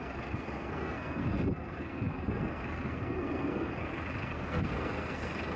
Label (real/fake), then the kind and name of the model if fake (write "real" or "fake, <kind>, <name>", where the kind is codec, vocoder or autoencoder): fake, codec, SNAC